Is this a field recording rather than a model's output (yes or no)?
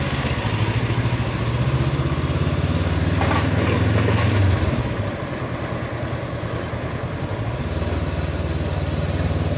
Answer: yes